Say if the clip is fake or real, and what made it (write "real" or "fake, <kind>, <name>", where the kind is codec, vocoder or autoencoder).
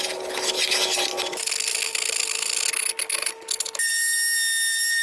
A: real